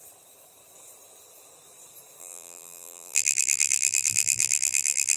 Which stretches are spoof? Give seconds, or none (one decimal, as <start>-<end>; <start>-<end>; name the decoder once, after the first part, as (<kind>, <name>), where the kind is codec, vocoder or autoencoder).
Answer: 2.2-5.2 (vocoder, BigVGAN v2)